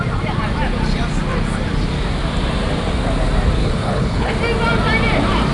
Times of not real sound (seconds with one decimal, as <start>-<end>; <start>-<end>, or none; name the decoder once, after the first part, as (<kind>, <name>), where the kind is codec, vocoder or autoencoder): 3.6-4.3 (codec, HILCodec)